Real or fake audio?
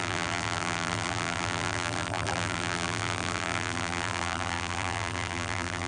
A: fake